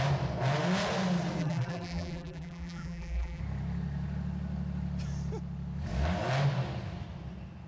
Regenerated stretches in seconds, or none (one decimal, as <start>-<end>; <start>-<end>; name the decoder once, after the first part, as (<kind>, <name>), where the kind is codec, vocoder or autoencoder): 1.4-3.4 (vocoder, BigVGAN v2)